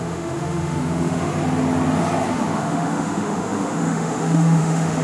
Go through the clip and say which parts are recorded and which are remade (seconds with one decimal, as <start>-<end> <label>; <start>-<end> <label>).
0.0-1.3 remade; 1.3-2.3 recorded; 2.3-5.0 remade